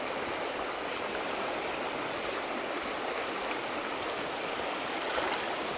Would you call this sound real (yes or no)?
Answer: yes